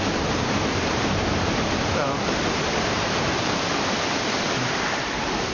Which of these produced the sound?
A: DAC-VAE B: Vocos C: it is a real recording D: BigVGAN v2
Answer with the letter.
D